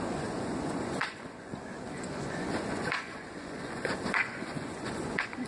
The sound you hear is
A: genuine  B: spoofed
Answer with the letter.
B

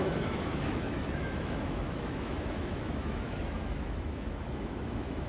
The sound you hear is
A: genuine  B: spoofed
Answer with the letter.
B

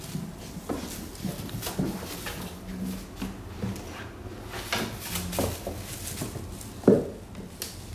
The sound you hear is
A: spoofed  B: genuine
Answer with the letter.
B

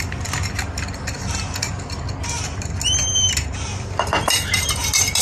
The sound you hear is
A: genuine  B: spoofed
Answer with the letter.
A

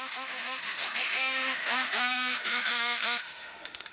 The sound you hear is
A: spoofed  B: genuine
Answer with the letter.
A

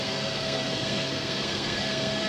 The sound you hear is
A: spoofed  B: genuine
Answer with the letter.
A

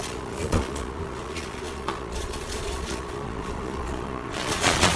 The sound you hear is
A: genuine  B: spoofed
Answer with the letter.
B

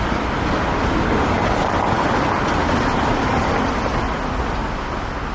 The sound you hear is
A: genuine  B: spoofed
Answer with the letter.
A